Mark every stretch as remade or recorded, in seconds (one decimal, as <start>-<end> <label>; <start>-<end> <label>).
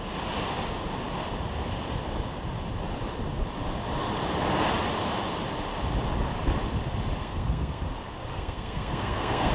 0.0-7.2 recorded; 7.2-7.8 remade; 7.8-8.3 recorded; 8.3-9.5 remade